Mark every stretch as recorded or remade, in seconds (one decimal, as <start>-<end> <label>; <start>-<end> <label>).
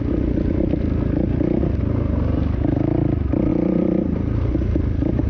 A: 0.0-3.5 recorded; 3.5-5.3 remade